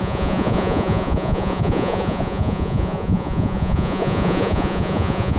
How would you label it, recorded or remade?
remade